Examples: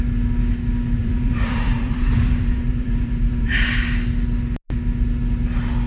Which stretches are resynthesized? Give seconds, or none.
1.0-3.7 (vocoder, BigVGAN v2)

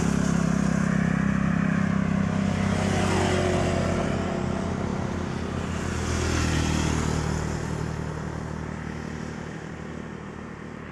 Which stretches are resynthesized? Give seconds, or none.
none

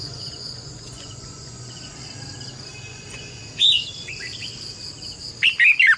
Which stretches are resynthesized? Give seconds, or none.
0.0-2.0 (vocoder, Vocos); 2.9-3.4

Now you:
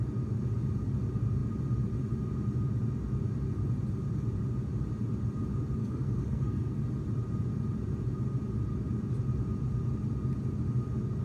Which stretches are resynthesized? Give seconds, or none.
5.8-6.8 (codec, SNAC)

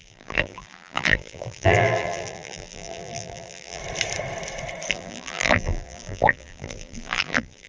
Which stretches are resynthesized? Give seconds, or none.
0.0-3.8 (vocoder, BigVGAN v2); 4.9-7.7

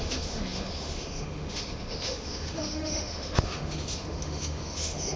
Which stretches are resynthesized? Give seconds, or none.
0.0-5.2 (autoencoder, DAC-VAE)

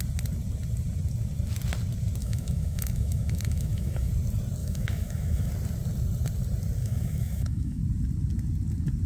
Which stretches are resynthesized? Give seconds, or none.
2.2-4.1 (autoencoder, DAC-VAE); 4.6-5.5; 6.8-7.8

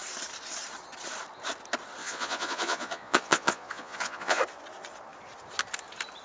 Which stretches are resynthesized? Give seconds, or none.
2.0-4.4 (vocoder, Vocos)